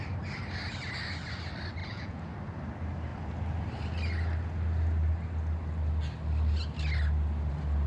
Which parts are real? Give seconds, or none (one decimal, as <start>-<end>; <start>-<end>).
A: 0.0-1.8; 2.3-7.9